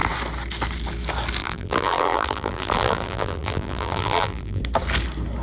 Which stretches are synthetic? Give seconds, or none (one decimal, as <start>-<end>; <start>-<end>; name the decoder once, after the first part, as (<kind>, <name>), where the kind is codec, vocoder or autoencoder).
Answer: 1.4-4.6 (vocoder, BigVGAN v2)